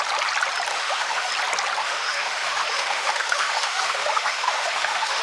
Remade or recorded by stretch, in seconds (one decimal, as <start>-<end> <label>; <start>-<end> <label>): 0.0-0.7 recorded; 0.7-1.3 remade; 1.3-1.8 recorded; 1.8-5.2 remade